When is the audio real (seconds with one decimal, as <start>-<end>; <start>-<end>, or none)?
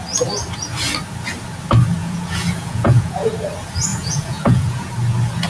0.0-2.0; 3.3-3.9; 4.9-5.5